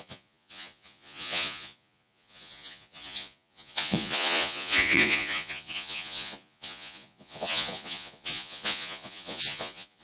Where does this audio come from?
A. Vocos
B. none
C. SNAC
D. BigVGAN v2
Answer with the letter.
A